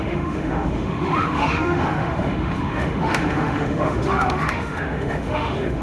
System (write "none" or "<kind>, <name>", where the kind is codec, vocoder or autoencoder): autoencoder, DAC-VAE